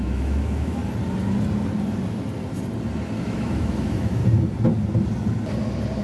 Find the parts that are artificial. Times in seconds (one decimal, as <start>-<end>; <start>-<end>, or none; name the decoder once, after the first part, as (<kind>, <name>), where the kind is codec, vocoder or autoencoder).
0.0-0.8 (autoencoder, DAC-VAE); 3.2-4.2